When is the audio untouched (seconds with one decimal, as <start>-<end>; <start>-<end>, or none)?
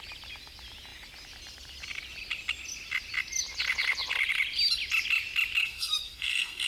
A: 0.0-5.6